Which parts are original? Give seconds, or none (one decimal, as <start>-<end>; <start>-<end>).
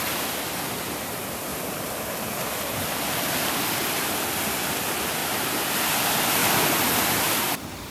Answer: 0.0-1.5; 3.2-5.2; 5.7-6.4